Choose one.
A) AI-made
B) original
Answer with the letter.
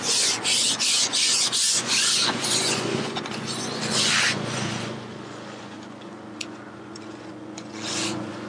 A